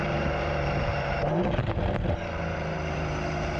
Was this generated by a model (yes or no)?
yes